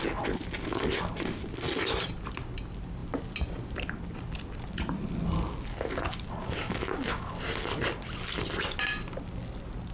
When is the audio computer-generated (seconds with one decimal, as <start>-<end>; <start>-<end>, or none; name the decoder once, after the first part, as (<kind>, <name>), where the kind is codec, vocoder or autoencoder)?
6.4-7.3 (autoencoder, DAC-VAE)